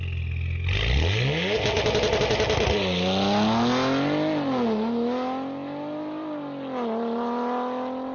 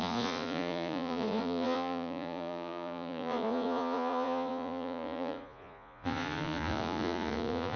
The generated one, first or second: second